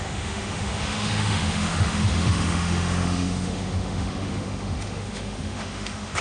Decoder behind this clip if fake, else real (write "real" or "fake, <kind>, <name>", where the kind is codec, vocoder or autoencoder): fake, autoencoder, DAC-VAE